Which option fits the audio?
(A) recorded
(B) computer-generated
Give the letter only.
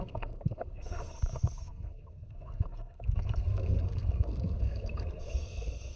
B